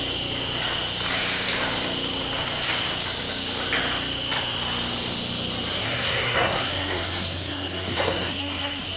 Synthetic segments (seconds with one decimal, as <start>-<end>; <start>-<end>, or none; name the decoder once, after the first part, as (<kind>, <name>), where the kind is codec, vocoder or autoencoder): 5.7-9.0 (codec, SNAC)